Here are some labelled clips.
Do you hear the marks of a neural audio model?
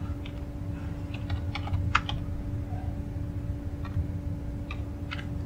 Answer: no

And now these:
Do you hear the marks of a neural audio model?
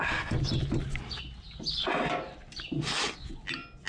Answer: no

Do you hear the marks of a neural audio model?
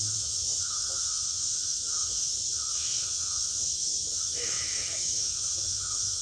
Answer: yes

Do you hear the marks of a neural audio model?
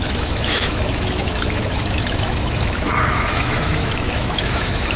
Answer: yes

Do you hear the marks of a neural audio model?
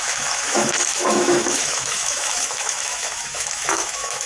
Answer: yes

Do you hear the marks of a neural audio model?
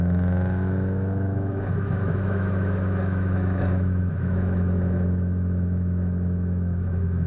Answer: yes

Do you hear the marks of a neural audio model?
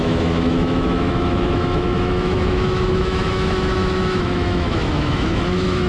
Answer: yes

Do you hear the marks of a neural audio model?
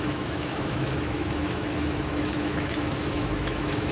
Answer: yes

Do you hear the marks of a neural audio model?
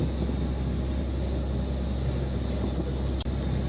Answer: no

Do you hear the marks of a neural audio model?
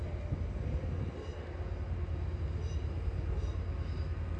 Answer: no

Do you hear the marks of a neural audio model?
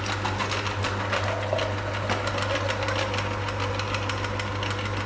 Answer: no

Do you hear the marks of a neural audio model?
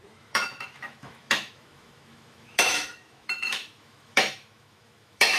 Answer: yes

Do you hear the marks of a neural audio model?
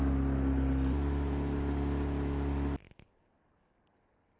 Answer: no